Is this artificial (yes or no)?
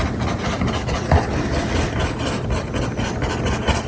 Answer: no